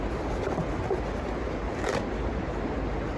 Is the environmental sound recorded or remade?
recorded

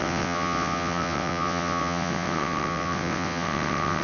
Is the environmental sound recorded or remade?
remade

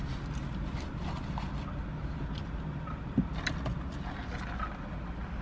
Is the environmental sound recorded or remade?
recorded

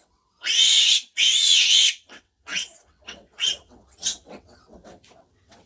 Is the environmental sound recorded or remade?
remade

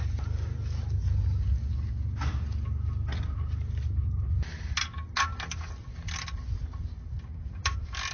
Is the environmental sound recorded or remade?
recorded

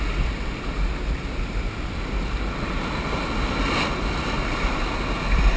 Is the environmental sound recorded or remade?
recorded